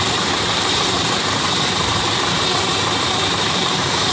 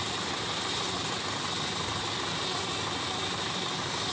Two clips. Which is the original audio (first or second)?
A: second